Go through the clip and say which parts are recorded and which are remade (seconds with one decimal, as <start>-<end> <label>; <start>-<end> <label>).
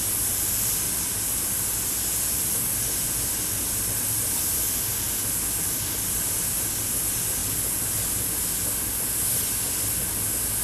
0.0-10.6 recorded